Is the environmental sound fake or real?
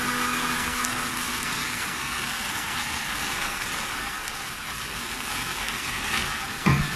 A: fake